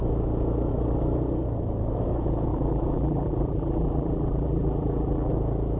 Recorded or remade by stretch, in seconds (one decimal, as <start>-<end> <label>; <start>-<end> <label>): 0.0-2.5 recorded; 2.5-5.3 remade; 5.3-5.8 recorded